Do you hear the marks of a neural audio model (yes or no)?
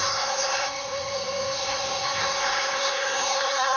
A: yes